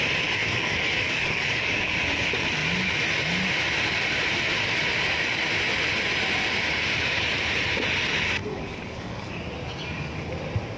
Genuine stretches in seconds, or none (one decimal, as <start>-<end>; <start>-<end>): 0.0-0.4; 2.1-8.4; 9.3-10.8